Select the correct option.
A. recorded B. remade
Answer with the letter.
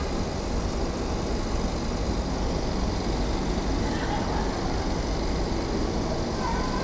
A